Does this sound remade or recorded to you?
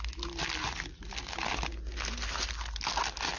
recorded